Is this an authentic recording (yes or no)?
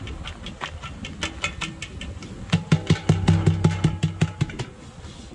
yes